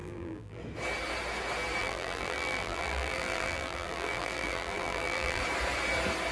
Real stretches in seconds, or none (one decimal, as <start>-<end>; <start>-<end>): 0.6-1.8; 5.4-6.3